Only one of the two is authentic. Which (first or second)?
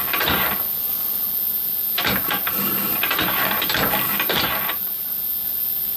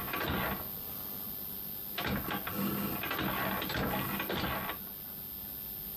second